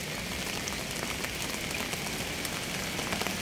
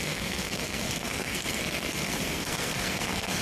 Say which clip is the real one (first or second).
first